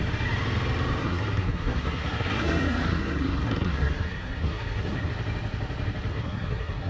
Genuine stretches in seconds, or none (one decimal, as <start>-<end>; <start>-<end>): 0.0-1.0; 5.1-6.1